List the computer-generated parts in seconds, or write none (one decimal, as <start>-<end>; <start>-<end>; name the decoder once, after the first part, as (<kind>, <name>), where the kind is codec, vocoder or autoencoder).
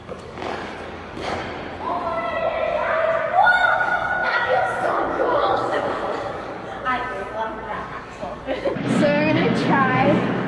0.0-1.4 (codec, DAC); 3.2-10.5